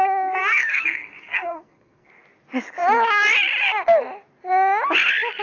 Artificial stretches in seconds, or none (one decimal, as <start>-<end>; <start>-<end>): 0.4-2.1